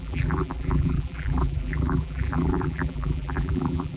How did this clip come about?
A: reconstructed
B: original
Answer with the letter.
A